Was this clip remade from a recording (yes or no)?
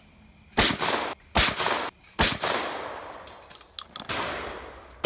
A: no